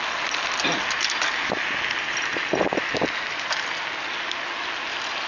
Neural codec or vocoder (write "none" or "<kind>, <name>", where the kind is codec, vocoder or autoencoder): none